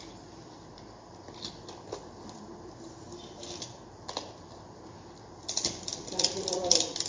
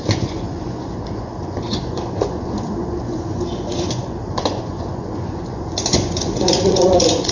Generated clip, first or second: second